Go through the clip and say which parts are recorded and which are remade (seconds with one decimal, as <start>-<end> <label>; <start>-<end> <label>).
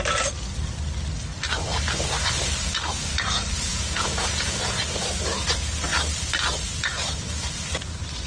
0.0-3.7 recorded; 3.7-4.8 remade; 4.8-8.3 recorded